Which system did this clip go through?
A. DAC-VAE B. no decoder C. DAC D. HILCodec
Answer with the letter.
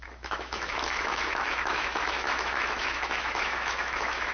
A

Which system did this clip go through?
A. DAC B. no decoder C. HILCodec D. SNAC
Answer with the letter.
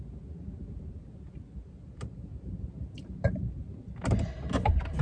B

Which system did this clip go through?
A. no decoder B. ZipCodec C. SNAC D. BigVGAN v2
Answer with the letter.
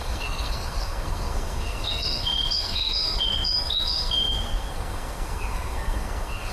C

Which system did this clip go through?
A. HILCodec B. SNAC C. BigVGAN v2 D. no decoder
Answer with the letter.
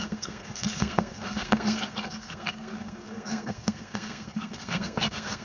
B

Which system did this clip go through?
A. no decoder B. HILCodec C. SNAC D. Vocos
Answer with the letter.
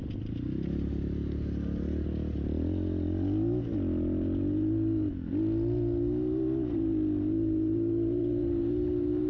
A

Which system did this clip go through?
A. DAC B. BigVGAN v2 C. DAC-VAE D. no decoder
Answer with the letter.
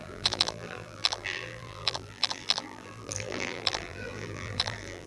B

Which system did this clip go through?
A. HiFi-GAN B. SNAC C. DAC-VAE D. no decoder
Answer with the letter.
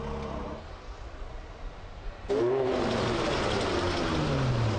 D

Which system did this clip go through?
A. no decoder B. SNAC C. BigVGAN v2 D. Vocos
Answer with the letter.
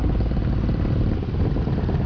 A